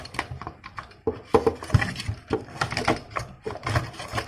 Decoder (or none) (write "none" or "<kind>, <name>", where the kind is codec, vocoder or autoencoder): none